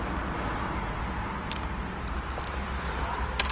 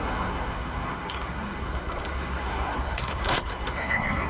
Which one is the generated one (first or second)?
second